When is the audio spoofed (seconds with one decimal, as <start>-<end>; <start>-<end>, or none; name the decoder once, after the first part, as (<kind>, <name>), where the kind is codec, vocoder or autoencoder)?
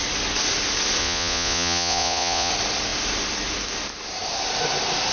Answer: 1.0-2.5 (vocoder, Vocos)